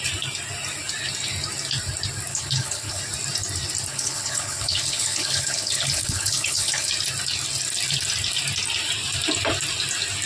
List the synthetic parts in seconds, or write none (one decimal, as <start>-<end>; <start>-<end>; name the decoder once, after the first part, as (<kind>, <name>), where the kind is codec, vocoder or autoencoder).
2.3-3.0 (codec, HILCodec); 3.9-6.9